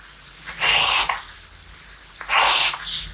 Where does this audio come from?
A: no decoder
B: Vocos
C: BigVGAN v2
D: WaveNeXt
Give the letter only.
A